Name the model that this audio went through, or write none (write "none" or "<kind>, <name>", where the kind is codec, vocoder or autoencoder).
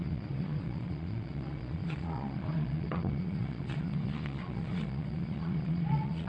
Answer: vocoder, Vocos